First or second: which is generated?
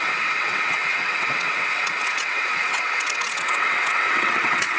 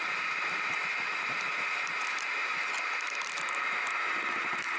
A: first